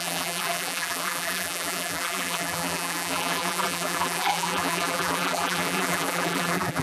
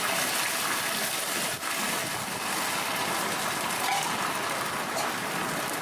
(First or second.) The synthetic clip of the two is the first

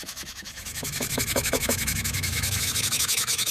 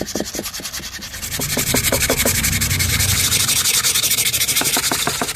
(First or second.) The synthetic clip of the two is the first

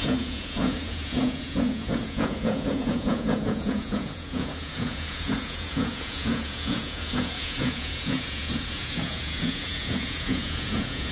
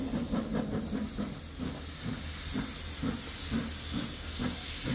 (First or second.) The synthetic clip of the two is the first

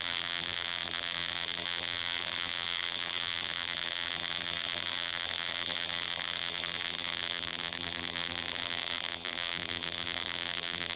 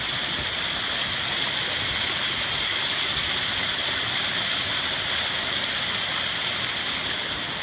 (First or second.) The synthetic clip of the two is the first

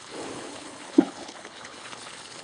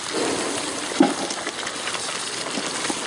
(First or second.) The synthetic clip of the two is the first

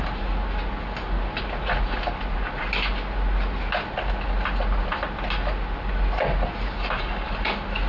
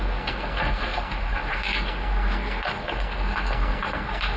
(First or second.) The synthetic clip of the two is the second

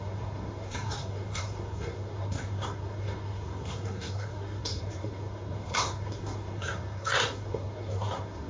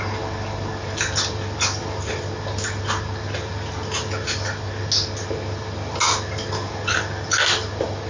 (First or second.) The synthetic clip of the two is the first